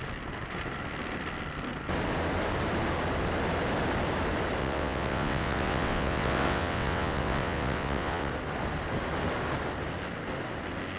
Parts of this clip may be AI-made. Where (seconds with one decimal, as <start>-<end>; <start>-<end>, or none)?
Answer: 4.6-8.3

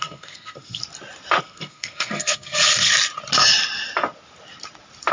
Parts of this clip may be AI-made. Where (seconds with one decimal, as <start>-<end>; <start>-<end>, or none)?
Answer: 0.0-0.8; 1.4-2.9

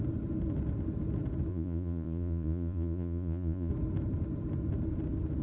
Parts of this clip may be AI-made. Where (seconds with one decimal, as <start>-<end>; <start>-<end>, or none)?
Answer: 1.5-3.7

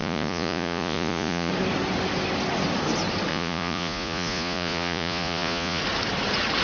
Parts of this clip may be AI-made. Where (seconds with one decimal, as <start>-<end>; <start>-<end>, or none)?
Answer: 0.0-1.5; 3.3-5.8

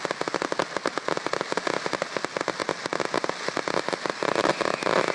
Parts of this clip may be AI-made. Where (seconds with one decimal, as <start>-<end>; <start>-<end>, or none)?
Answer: none

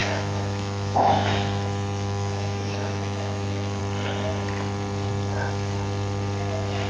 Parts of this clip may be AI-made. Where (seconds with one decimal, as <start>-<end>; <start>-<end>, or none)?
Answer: 0.0-3.8